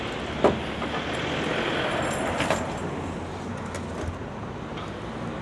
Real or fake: real